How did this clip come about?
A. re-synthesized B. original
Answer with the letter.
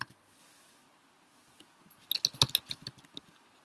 B